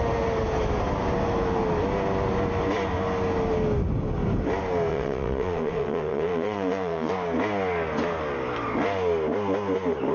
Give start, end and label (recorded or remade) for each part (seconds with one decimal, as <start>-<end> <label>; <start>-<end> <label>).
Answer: 0.0-4.9 recorded; 4.9-7.1 remade; 7.1-10.1 recorded